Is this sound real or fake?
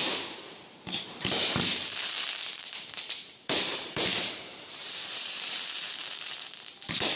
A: fake